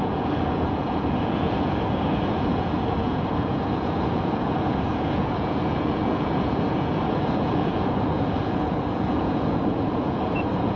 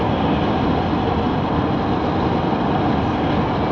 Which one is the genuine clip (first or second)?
second